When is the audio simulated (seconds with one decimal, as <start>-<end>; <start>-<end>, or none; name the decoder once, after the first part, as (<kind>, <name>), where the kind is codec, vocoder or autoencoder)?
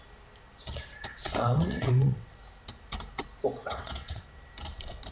1.1-2.4 (vocoder, WaveNeXt); 3.6-4.2